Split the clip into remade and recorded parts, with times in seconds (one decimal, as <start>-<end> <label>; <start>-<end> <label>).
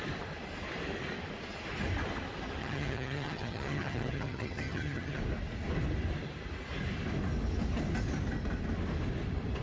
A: 0.0-2.6 recorded; 2.6-5.2 remade; 5.2-9.6 recorded